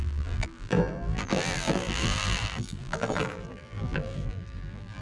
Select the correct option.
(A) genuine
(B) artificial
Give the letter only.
B